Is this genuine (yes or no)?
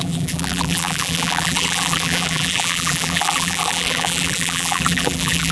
no